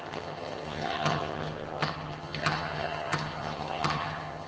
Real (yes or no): no